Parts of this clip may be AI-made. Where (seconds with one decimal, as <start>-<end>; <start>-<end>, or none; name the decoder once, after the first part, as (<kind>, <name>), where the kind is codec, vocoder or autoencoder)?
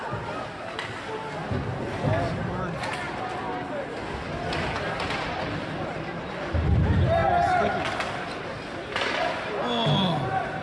none